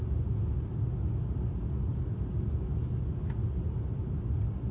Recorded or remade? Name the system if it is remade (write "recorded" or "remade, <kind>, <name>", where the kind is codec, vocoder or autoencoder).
recorded